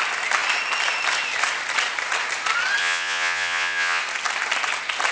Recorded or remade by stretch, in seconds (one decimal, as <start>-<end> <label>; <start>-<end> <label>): 0.0-2.8 recorded; 2.8-4.0 remade; 4.0-5.1 recorded